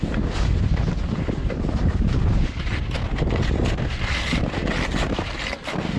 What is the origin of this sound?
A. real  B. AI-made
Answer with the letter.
A